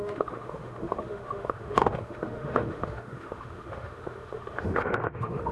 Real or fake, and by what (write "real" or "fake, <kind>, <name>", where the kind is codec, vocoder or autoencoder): fake, autoencoder, DAC-VAE